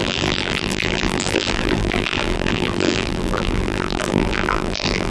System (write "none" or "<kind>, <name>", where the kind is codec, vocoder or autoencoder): vocoder, BigVGAN v2